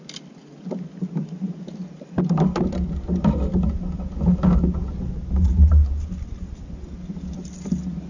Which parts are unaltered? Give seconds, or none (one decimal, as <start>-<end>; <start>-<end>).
0.0-8.1